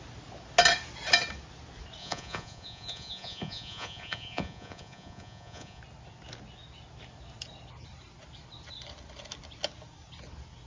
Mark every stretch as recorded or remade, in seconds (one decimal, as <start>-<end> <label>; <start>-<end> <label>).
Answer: 0.0-2.0 recorded; 2.0-5.8 remade; 5.8-10.7 recorded